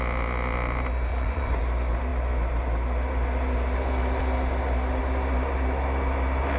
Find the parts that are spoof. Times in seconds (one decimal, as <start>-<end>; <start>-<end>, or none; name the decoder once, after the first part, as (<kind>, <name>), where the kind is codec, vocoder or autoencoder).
1.1-1.6 (vocoder, Vocos)

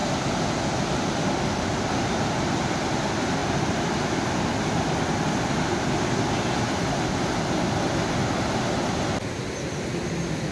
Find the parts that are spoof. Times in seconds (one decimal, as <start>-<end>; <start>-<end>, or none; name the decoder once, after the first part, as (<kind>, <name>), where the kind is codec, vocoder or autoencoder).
none

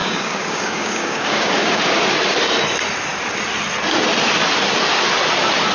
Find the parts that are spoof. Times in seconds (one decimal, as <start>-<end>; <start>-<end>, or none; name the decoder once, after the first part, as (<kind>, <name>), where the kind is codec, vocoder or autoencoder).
0.0-1.8 (codec, DAC)

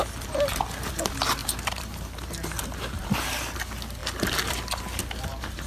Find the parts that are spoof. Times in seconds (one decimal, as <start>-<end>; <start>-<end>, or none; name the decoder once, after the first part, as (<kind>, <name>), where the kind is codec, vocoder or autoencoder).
1.4-2.3 (vocoder, BigVGAN v2)